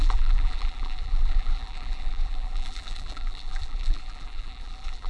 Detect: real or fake fake